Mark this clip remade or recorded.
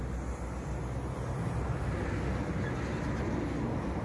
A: recorded